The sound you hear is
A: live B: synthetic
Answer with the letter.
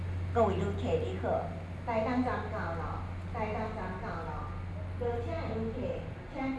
A